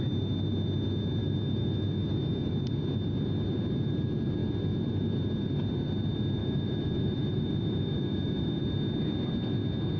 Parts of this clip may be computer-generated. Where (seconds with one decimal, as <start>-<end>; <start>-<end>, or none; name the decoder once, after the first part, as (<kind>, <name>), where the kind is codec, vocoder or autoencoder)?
1.2-2.5 (autoencoder, DAC-VAE); 6.4-8.6